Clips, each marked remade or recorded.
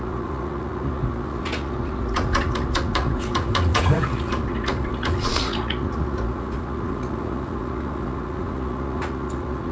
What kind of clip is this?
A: remade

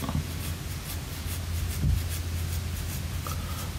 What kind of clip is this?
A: recorded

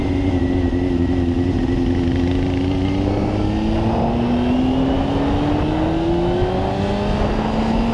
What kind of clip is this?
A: recorded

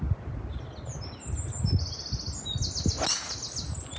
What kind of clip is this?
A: recorded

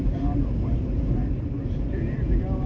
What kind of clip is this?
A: recorded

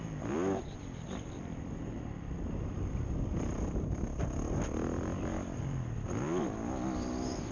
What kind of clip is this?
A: recorded